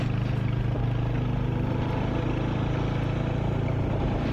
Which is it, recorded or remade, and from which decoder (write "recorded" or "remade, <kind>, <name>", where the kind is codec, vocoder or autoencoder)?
recorded